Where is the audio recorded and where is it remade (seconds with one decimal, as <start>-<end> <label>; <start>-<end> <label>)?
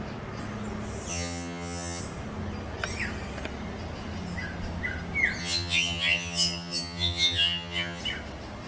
0.0-1.1 recorded; 1.1-2.0 remade; 2.0-5.4 recorded; 5.4-8.0 remade; 8.0-8.7 recorded